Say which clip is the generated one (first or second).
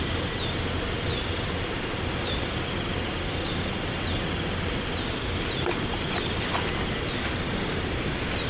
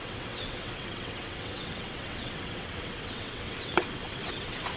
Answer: second